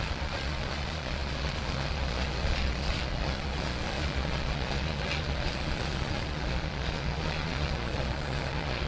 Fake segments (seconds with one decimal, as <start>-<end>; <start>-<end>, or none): 0.0-8.9

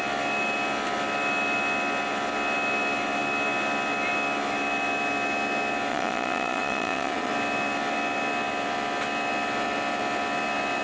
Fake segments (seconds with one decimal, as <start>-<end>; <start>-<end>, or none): 5.9-7.3

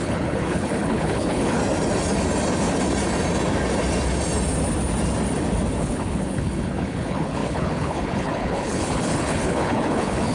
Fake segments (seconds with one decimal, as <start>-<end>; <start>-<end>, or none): 0.0-1.6; 5.8-10.3